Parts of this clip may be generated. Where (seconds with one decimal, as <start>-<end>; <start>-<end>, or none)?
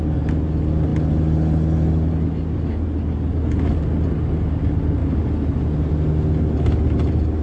none